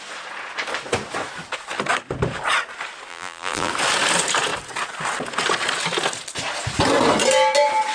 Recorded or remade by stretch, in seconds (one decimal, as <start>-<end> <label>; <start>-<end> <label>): 0.0-3.1 recorded; 3.1-3.7 remade; 3.7-7.9 recorded